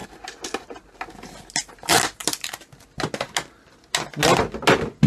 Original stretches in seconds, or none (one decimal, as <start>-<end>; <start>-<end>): 0.0-5.1